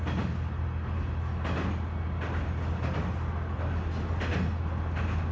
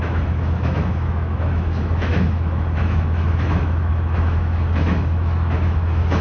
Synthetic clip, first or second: second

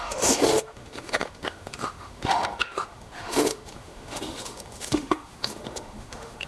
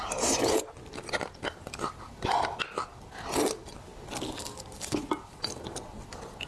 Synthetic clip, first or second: first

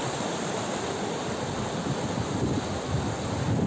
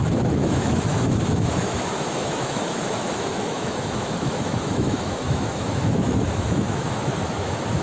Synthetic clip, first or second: second